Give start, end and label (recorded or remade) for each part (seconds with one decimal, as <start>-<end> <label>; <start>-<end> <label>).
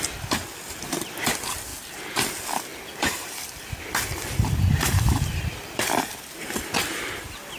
0.0-1.7 recorded; 1.7-2.3 remade; 2.3-2.7 recorded; 2.7-6.0 remade; 6.0-7.6 recorded